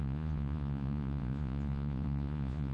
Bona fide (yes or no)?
no